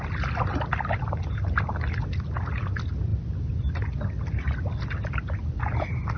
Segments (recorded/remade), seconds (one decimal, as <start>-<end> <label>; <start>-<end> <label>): 0.0-6.2 recorded